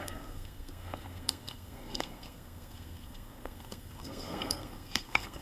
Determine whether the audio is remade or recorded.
remade